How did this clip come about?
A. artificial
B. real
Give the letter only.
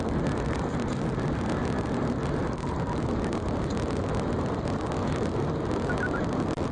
B